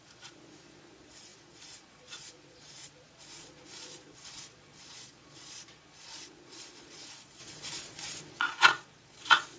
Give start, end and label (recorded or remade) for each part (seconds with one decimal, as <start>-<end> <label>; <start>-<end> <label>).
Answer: 0.0-9.6 remade